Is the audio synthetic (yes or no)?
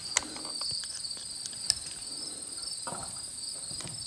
no